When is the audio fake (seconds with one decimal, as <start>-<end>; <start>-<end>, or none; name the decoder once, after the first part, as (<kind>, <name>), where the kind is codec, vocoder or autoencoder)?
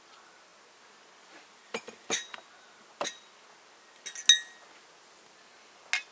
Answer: none